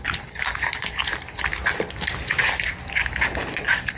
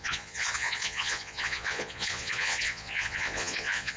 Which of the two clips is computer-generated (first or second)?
second